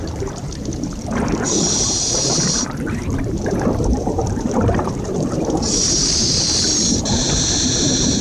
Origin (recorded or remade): remade